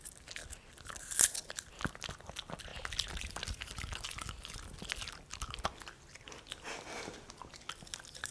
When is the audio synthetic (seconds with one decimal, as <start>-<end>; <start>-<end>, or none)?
none